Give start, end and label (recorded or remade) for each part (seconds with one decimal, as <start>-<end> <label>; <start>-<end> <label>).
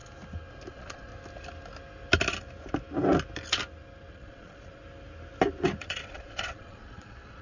0.0-0.7 recorded; 0.7-1.1 remade; 1.1-4.1 recorded; 4.1-4.8 remade; 4.8-5.8 recorded; 5.8-7.4 remade